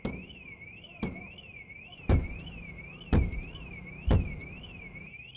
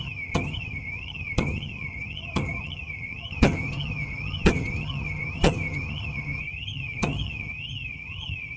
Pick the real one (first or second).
first